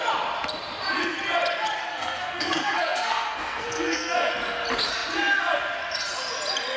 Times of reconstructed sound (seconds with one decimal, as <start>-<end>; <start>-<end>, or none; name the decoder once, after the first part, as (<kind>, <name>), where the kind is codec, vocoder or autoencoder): 1.8-4.3 (codec, SNAC)